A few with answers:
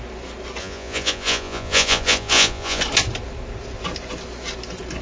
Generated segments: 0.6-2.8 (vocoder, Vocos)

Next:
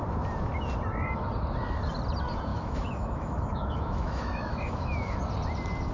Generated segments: 2.5-5.2 (autoencoder, DAC-VAE)

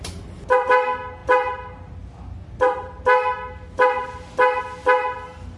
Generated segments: none

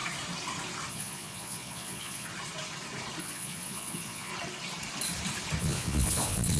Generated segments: 0.9-2.3 (vocoder, Vocos); 3.2-4.3; 5.6-6.6